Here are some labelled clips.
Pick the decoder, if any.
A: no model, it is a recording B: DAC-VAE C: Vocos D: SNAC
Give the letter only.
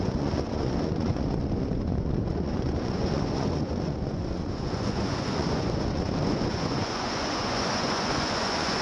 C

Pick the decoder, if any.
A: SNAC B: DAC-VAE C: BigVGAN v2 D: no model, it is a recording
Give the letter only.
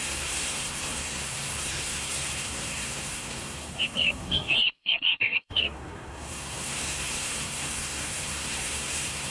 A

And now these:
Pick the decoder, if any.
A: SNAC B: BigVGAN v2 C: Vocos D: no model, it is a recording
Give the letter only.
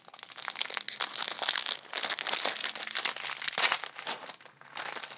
D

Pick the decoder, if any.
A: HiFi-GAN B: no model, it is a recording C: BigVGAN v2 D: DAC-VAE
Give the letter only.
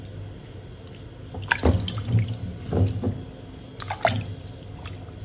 B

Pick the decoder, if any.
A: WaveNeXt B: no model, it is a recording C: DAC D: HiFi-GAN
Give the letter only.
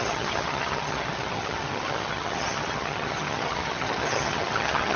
D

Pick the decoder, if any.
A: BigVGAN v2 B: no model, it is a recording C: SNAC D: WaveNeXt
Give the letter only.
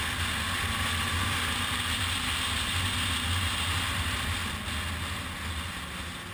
B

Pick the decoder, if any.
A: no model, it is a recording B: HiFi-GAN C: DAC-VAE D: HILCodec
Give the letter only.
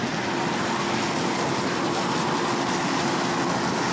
A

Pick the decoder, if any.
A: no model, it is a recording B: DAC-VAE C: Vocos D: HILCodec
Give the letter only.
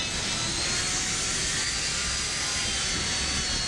A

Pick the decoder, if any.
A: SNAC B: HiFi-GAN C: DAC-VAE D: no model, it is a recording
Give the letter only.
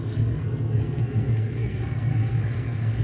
A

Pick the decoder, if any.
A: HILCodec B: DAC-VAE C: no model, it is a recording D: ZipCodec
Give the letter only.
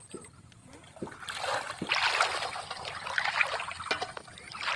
C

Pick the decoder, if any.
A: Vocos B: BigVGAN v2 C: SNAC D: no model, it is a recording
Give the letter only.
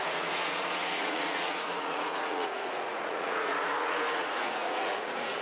A